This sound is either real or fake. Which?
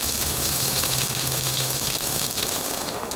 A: fake